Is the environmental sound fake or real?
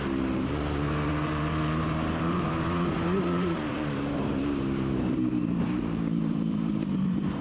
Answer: fake